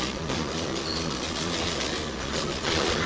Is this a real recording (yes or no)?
no